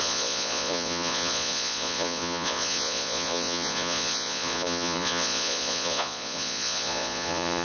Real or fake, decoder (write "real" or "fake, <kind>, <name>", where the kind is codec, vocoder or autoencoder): fake, vocoder, Vocos